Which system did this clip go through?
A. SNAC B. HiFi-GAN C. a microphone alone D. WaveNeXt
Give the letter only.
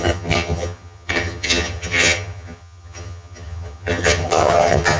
B